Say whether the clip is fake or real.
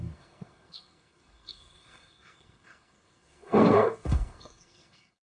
fake